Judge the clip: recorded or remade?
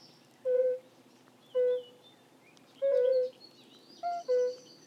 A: remade